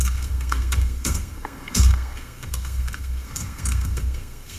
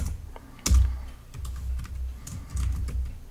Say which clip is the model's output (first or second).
first